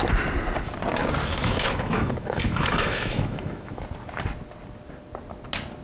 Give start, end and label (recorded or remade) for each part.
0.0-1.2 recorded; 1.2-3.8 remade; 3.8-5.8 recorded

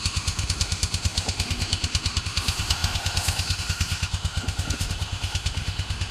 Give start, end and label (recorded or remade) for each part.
0.0-6.1 remade